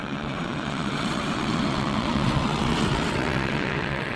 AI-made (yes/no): yes